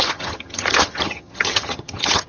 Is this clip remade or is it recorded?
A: remade